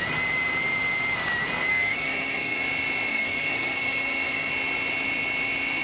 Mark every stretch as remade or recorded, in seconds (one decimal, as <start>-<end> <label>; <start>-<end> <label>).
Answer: 0.0-1.7 recorded; 1.7-2.6 remade; 2.6-3.1 recorded; 3.1-4.5 remade; 4.5-5.8 recorded